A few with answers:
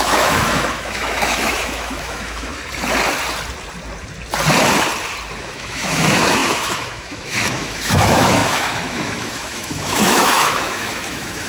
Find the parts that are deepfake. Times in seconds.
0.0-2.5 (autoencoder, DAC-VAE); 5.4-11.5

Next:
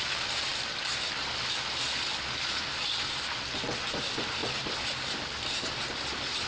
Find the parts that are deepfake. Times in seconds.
none

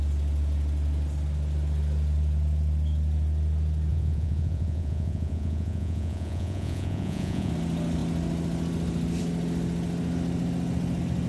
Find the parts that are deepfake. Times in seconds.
3.9-7.5 (vocoder, Vocos)

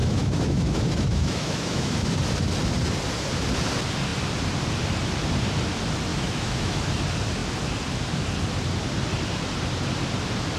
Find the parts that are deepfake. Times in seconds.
0.0-2.2 (autoencoder, DAC-VAE); 6.1-6.9

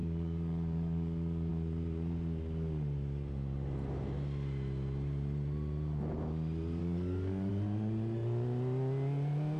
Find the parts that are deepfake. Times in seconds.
0.0-1.5 (codec, DAC); 6.8-7.5

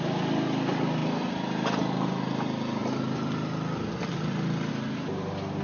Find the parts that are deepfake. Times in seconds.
none

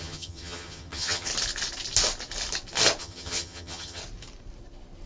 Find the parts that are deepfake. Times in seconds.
0.0-1.3 (vocoder, HiFi-GAN); 3.0-4.0